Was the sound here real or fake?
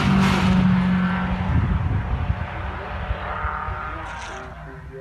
real